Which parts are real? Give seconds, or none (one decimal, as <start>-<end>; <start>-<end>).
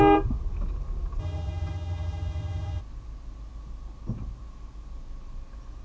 0.0-1.2; 2.8-5.8